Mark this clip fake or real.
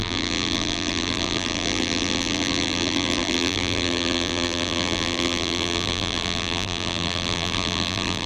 fake